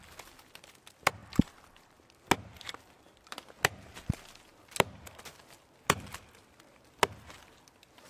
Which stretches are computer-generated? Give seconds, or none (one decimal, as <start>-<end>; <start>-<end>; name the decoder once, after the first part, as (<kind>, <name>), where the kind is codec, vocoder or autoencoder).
none